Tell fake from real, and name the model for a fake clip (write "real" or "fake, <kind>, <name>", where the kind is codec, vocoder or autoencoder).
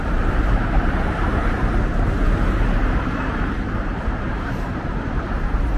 fake, vocoder, BigVGAN v2